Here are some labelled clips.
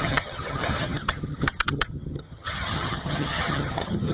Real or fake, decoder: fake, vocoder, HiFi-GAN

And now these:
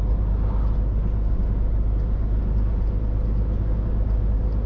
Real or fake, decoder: real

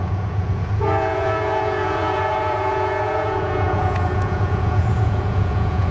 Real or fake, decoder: fake, vocoder, Vocos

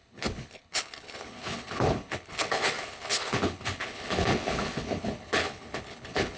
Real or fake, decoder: fake, codec, HILCodec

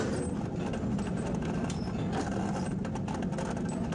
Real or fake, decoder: real